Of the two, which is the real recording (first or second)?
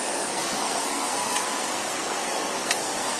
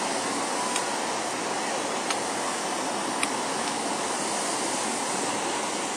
second